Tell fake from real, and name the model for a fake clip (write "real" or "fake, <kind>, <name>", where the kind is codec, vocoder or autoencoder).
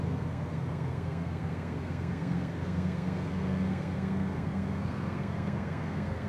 fake, codec, SNAC